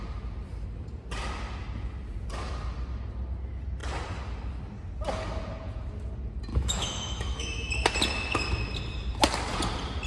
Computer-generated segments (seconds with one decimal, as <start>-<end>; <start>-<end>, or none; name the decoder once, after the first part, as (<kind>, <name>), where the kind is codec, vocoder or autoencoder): 6.5-7.7 (autoencoder, DAC-VAE)